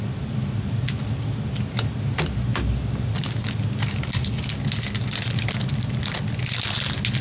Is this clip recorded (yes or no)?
yes